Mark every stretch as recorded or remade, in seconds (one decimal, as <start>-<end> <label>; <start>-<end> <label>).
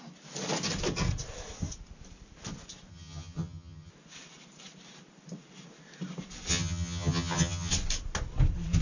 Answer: 0.0-2.9 recorded; 2.9-3.9 remade; 3.9-6.5 recorded; 6.5-7.7 remade; 7.7-8.8 recorded